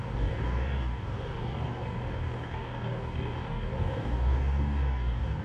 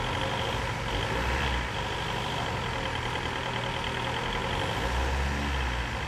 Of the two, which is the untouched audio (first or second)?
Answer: second